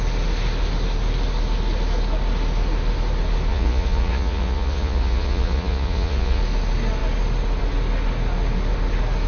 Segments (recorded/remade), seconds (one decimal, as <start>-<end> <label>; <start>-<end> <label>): 0.0-3.5 recorded; 3.5-6.4 remade; 6.4-9.3 recorded